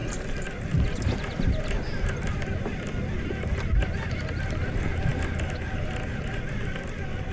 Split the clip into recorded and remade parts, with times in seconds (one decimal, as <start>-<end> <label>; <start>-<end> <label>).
0.0-7.3 recorded